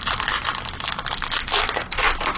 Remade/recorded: recorded